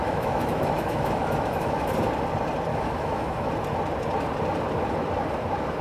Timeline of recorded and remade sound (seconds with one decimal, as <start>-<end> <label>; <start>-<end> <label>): 0.0-1.9 remade; 1.9-2.7 recorded; 2.7-3.5 remade; 3.5-5.8 recorded